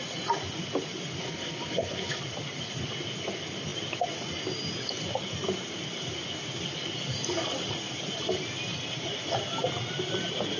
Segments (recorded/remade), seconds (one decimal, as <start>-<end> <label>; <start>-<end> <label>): 0.0-1.2 recorded; 1.2-2.2 remade; 2.2-10.6 recorded